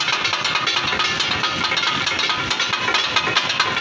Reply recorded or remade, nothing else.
recorded